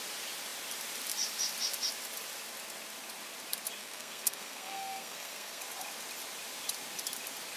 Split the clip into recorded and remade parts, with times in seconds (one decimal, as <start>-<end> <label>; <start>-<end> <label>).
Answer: 0.0-3.8 recorded; 3.8-5.6 remade; 5.6-7.6 recorded